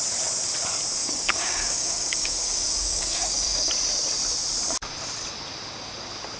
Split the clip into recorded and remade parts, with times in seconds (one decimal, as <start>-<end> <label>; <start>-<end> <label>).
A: 0.0-1.0 recorded; 1.0-3.7 remade; 3.7-6.4 recorded